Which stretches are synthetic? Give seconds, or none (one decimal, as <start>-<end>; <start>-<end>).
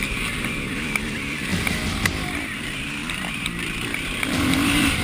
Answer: 0.7-1.5; 2.1-3.0; 3.8-5.0